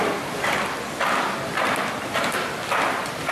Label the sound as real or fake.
real